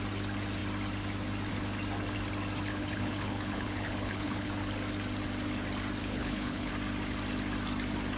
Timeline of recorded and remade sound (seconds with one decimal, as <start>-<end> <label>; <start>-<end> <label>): 0.0-2.7 recorded; 2.7-4.5 remade; 4.5-6.0 recorded; 6.0-6.7 remade; 6.7-8.2 recorded